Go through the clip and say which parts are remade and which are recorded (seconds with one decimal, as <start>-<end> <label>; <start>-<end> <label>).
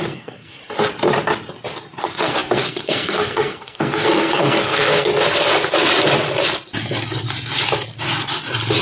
0.0-0.6 remade; 0.6-2.0 recorded; 2.0-5.1 remade; 5.1-8.8 recorded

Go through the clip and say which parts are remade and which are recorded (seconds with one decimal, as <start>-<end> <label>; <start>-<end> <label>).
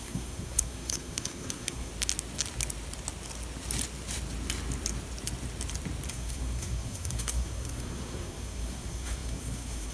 0.0-1.9 remade; 1.9-6.1 recorded; 6.1-9.9 remade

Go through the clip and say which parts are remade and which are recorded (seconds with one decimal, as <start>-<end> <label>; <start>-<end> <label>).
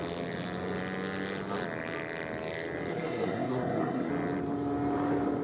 0.0-2.9 recorded; 2.9-4.1 remade; 4.1-5.4 recorded